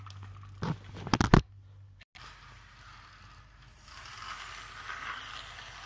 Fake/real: real